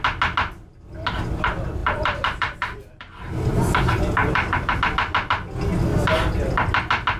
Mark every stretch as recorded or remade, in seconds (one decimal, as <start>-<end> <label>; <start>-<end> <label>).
0.0-1.8 recorded; 1.8-3.6 remade; 3.6-4.2 recorded; 4.2-4.8 remade; 4.8-7.2 recorded